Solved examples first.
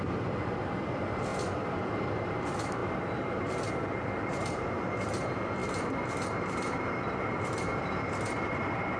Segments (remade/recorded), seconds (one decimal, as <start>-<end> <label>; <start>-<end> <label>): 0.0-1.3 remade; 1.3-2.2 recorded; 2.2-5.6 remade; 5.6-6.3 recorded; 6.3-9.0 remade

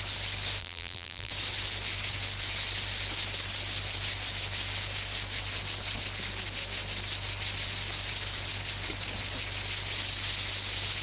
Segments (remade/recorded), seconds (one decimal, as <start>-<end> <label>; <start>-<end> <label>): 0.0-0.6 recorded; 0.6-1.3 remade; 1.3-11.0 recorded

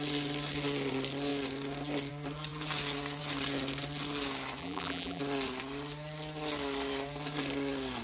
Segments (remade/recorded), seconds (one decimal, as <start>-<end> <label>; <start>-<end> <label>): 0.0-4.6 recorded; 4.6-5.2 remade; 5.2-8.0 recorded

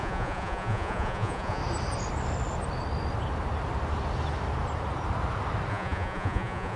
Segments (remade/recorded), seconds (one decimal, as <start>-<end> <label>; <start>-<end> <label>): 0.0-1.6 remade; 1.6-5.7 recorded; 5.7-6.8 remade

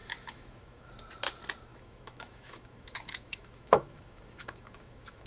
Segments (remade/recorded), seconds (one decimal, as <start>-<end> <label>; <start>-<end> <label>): 0.0-0.9 remade; 0.9-1.7 recorded; 1.7-5.3 remade